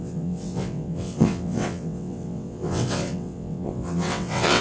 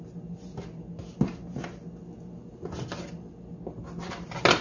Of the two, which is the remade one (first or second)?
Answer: first